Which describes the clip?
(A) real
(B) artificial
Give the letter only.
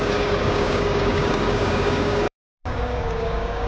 B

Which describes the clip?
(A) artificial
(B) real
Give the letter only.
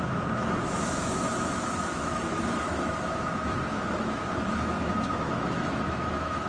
A